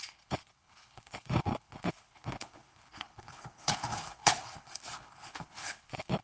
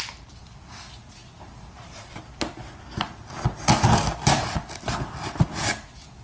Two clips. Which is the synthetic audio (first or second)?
first